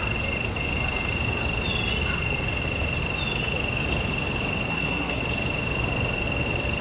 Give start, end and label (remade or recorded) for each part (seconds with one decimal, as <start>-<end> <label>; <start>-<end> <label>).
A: 0.0-4.7 recorded; 4.7-5.2 remade; 5.2-6.8 recorded